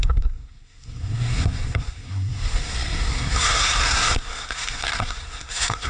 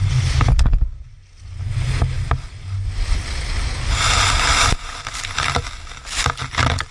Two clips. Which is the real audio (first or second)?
second